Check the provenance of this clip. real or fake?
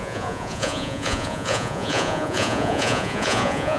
fake